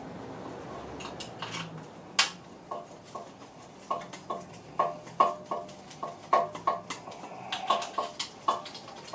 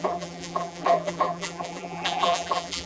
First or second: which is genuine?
first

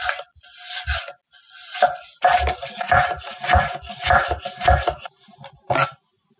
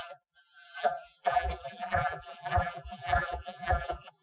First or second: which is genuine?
first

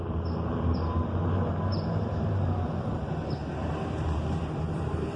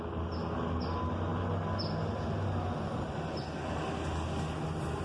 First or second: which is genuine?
second